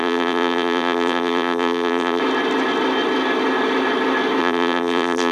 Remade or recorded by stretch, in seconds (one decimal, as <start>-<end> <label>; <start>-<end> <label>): 0.0-2.2 remade; 2.2-4.4 recorded; 4.4-5.3 remade